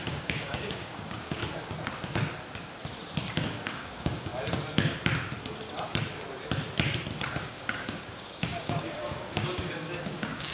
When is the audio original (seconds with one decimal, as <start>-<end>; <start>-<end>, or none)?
1.4-3.4; 4.3-7.4